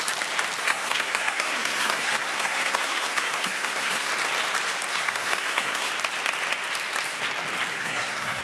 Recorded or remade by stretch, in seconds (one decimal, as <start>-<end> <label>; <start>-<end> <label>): 0.0-0.6 recorded; 0.6-4.1 remade; 4.1-4.9 recorded; 4.9-5.9 remade; 5.9-7.7 recorded; 7.7-8.4 remade